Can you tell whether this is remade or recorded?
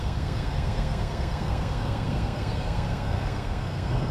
remade